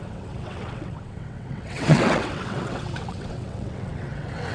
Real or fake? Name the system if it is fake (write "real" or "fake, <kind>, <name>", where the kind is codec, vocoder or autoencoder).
fake, vocoder, WaveNeXt